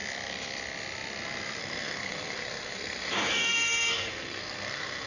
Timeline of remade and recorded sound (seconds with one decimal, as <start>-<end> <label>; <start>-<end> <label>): 0.0-1.6 recorded; 1.6-5.1 remade